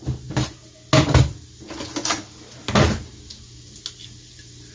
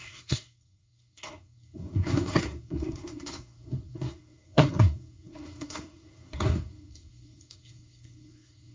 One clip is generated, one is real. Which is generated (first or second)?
second